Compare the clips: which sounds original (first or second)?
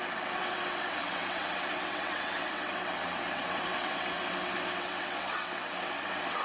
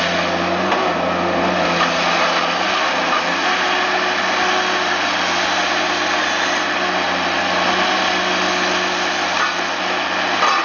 second